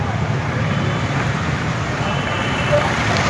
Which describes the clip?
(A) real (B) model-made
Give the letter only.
B